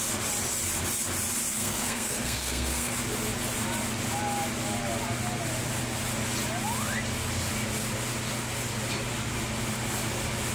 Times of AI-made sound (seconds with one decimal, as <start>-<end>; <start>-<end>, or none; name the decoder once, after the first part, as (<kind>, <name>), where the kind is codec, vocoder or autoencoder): 1.5-2.9 (codec, SNAC)